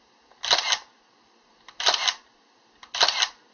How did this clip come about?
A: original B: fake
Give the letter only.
A